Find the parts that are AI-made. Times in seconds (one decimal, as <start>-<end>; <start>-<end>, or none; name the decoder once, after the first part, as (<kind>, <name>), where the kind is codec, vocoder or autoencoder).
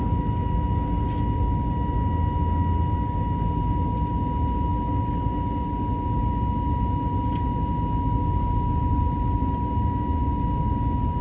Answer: none